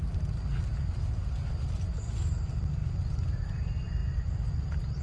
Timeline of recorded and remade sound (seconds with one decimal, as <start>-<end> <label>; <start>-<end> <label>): 0.0-5.0 recorded